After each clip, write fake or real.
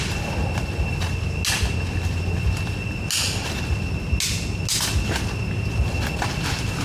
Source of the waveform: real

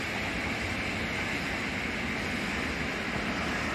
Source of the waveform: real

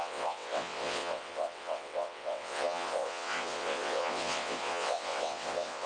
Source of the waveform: fake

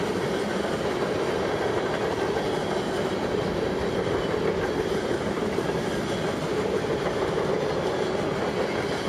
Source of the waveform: real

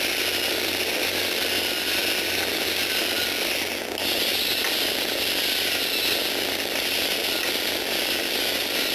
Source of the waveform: real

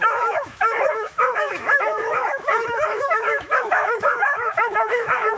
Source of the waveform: fake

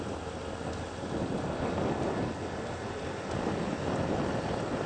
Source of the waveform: real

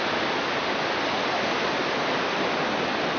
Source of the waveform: real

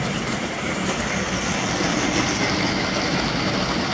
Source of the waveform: fake